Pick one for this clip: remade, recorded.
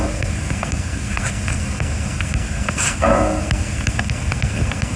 remade